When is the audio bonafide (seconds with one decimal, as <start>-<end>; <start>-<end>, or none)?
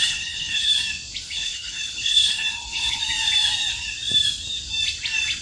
0.7-1.3; 3.0-5.4